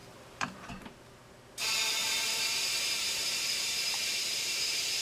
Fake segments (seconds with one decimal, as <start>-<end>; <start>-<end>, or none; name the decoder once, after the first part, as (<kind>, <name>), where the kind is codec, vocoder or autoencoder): 0.0-0.7 (vocoder, BigVGAN v2); 2.0-5.0